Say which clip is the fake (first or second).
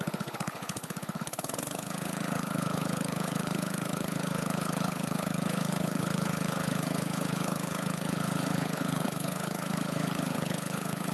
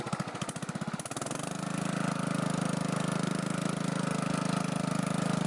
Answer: first